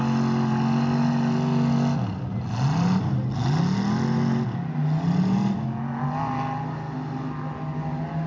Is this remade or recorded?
recorded